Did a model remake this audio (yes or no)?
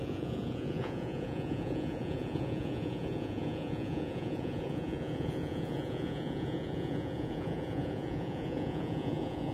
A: yes